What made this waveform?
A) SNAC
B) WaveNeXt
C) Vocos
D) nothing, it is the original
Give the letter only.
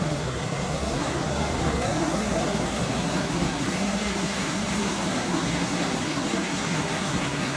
A